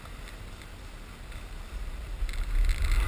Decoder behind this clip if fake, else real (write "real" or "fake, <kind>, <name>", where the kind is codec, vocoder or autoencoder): real